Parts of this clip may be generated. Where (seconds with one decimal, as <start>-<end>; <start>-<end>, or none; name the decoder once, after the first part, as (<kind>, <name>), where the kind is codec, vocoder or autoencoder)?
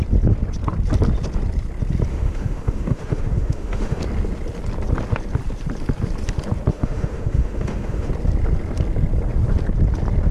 2.1-4.0 (autoencoder, DAC-VAE); 6.7-8.1